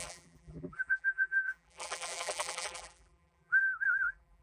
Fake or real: fake